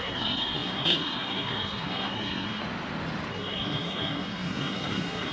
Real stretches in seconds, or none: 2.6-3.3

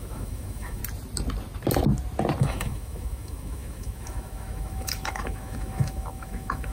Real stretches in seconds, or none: 0.8-2.4

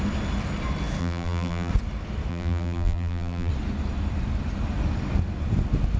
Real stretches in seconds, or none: 0.0-1.0; 1.7-2.3; 3.5-6.0